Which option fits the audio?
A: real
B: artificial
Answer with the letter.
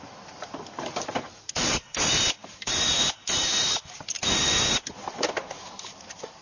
B